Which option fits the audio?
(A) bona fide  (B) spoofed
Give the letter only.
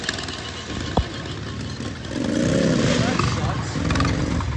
A